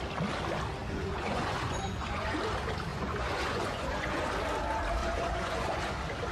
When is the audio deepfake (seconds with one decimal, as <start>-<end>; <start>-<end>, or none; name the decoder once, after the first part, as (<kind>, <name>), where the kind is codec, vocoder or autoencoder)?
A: 0.8-2.4 (vocoder, Vocos); 2.9-4.3; 5.0-5.8